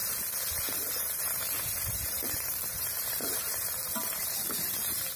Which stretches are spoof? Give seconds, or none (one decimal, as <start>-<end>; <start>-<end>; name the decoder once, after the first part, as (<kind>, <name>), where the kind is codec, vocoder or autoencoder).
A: 1.2-5.2 (vocoder, BigVGAN v2)